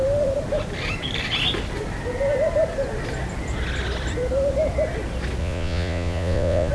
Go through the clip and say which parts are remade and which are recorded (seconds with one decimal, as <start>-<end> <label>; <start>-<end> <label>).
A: 0.0-5.4 recorded; 5.4-6.7 remade